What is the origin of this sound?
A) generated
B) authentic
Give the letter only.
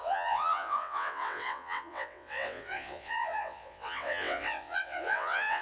A